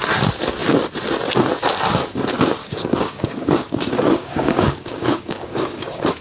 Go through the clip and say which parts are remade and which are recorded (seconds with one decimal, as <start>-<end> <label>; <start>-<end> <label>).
0.0-2.6 recorded; 2.6-6.2 remade